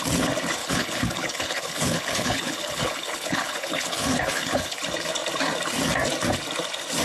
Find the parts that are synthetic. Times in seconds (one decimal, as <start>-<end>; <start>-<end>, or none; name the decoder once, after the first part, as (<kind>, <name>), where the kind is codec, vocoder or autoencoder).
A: 0.6-4.8 (codec, HILCodec)